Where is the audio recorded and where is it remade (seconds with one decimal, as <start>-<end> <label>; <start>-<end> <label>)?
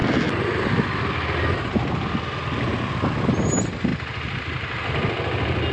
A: 0.0-5.7 recorded